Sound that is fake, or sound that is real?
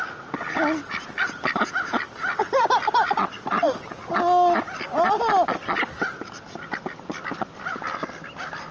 real